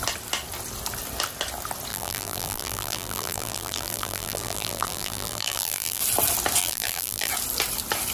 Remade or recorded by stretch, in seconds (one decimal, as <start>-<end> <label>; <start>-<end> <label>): 0.0-1.9 recorded; 1.9-6.0 remade; 6.0-6.6 recorded; 6.6-7.3 remade; 7.3-8.1 recorded